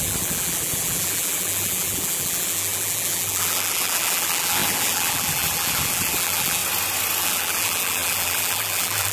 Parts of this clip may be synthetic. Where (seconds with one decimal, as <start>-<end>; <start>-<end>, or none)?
0.0-6.6; 7.2-9.1